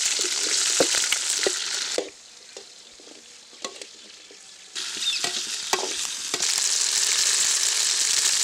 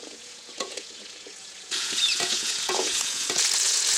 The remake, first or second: second